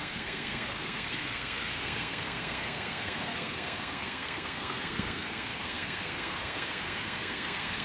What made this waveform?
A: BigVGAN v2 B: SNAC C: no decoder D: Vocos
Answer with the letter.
B